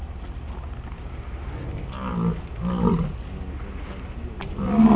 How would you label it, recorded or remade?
recorded